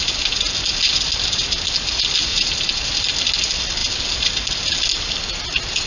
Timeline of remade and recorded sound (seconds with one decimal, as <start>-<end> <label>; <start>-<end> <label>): 0.0-2.3 recorded; 2.3-2.9 remade; 2.9-5.9 recorded